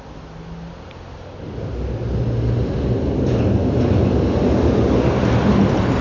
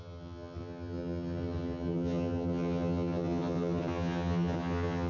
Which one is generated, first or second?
second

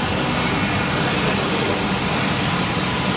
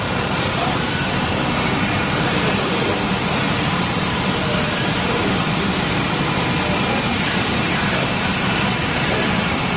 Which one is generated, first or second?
second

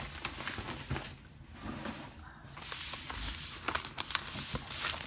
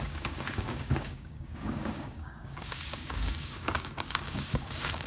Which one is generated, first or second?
second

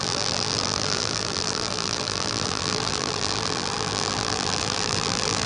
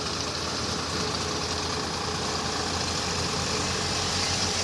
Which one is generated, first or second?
first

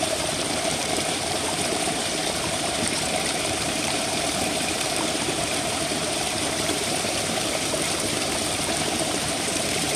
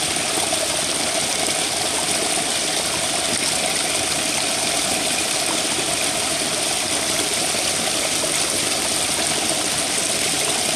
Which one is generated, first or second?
first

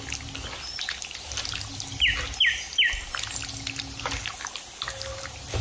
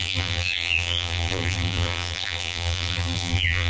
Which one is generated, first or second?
second